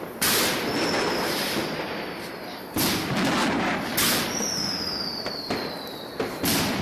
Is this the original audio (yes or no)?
yes